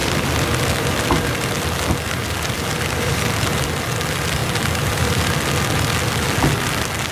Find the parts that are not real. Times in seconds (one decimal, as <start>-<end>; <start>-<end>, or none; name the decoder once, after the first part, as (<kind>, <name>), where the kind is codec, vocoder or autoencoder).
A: 0.0-3.1 (vocoder, BigVGAN v2)